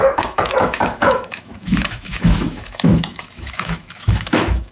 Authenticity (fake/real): fake